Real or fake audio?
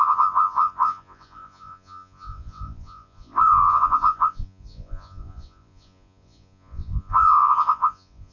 fake